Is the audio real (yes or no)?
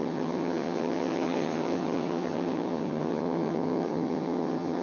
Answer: no